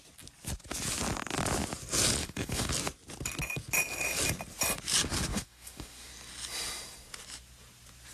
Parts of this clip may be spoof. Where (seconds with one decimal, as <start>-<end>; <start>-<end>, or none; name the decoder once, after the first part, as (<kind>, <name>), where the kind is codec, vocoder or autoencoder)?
2.2-2.7 (codec, DAC); 5.3-6.1